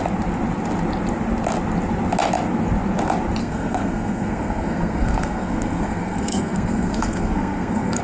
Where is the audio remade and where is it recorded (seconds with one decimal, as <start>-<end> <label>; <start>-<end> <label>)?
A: 0.0-3.4 recorded; 3.4-8.0 remade